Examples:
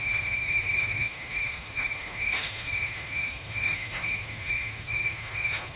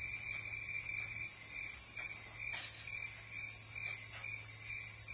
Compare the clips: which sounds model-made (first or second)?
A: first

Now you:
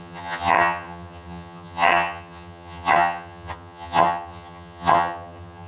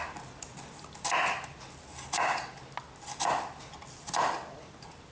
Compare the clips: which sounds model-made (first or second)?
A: first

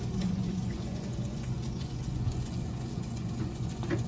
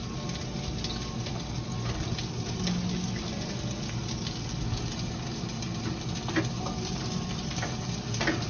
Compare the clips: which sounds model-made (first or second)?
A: first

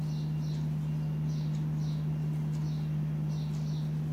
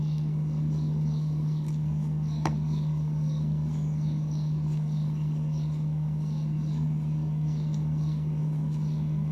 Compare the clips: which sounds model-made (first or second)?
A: second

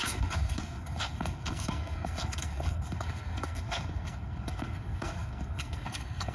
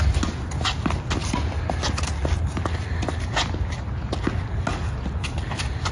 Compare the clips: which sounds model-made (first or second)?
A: first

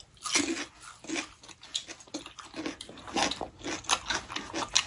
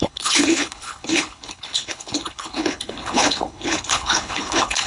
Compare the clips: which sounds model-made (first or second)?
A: second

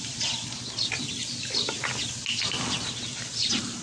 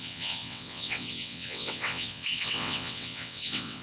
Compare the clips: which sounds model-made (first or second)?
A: second